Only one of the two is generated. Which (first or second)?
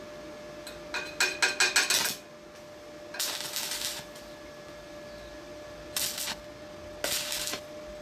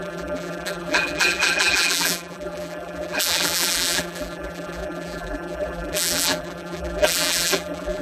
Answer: second